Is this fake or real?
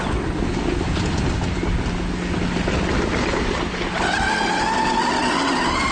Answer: real